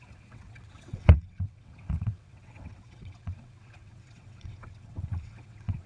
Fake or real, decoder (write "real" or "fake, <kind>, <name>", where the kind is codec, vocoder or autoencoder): fake, vocoder, WaveNeXt